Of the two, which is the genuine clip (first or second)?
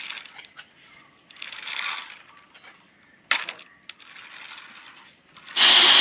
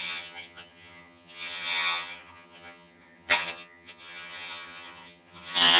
first